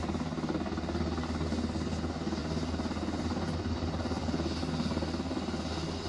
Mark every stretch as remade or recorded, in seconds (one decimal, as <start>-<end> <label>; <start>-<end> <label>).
0.0-6.1 recorded